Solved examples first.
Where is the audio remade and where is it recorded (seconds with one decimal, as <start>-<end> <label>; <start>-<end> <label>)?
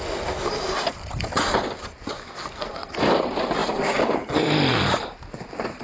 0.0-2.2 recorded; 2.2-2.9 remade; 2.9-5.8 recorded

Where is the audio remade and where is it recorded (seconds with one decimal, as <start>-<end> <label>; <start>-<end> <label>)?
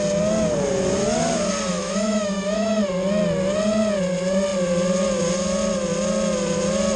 0.0-1.7 recorded; 1.7-2.8 remade; 2.8-7.0 recorded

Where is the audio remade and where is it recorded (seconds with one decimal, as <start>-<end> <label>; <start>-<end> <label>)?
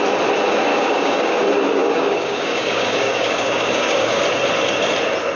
0.0-0.7 recorded; 0.7-1.4 remade; 1.4-1.8 recorded; 1.8-4.2 remade; 4.2-5.4 recorded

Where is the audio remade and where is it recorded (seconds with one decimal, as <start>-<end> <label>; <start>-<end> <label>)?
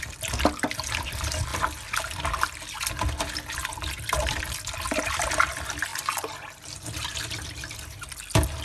0.0-8.6 recorded